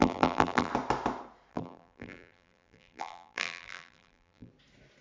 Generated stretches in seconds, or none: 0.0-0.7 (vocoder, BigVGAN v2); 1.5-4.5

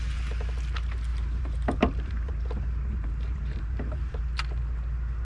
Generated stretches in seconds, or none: 1.1-4.2 (vocoder, BigVGAN v2)

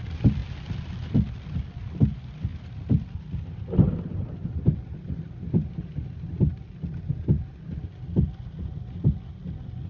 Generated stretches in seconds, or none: 0.4-1.3 (vocoder, BigVGAN v2); 2.5-6.3

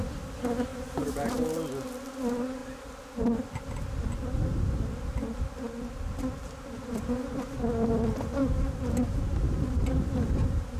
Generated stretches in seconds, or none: 0.7-1.3 (vocoder, BigVGAN v2); 8.4-9.2

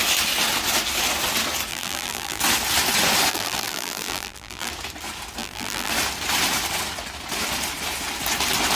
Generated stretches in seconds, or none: 1.7-2.4 (vocoder, BigVGAN v2); 3.3-4.7; 5.4-5.9

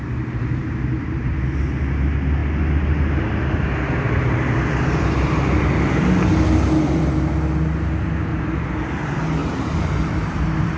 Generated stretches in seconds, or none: 0.6-1.3 (vocoder, BigVGAN v2); 8.3-9.0; 9.4-10.8

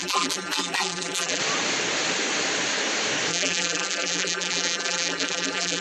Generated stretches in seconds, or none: 0.0-1.4 (vocoder, BigVGAN v2); 3.3-5.8